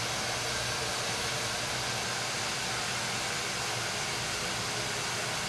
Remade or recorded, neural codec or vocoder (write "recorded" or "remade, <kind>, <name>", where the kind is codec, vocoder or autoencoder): recorded